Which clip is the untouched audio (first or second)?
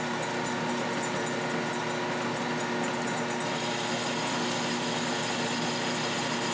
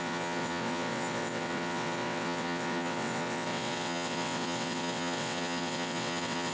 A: first